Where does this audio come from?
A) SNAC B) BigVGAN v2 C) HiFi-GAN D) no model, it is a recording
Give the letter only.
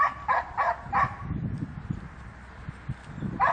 D